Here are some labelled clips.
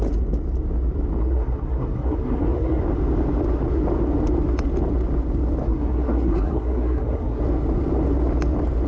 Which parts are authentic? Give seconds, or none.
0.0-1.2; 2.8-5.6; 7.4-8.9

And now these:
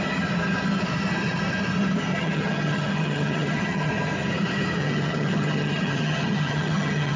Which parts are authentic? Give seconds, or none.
0.0-2.1; 3.9-4.8

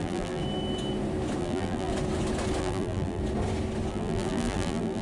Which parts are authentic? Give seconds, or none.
0.4-1.4; 1.9-2.6; 3.2-3.9

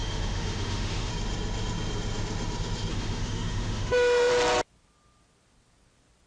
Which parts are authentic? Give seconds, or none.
1.1-2.9; 4.3-6.3

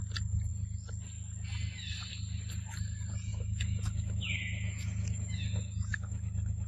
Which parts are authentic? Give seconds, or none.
0.0-3.3

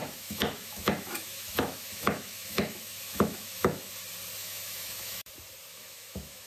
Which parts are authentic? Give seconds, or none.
3.9-4.4; 5.3-5.7

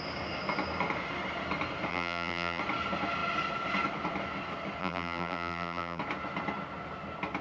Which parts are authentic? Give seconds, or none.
0.0-1.9; 2.6-4.8; 6.0-7.4